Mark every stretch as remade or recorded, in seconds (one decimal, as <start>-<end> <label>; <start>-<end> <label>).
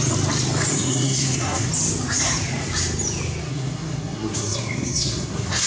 0.0-0.7 recorded; 0.7-1.7 remade; 1.7-3.5 recorded; 3.5-5.7 remade